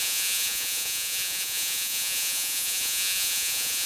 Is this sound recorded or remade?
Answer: remade